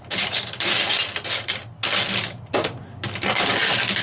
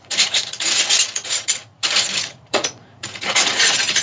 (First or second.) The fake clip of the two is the second